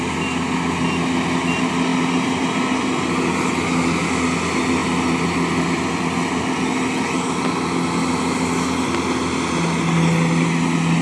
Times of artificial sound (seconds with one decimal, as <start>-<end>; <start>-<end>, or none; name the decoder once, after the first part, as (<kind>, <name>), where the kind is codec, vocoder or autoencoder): none